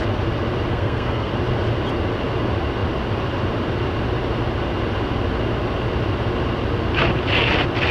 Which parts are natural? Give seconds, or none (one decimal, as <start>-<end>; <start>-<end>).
0.0-0.7; 1.3-7.9